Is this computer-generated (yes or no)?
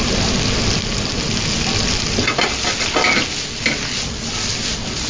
no